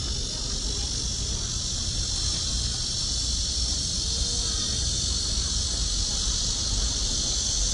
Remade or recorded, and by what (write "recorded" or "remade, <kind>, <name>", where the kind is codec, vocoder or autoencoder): recorded